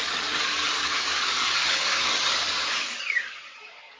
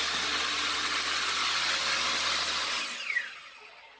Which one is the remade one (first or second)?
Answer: first